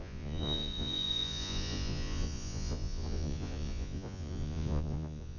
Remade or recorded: remade